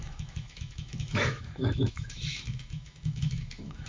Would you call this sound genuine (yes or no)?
no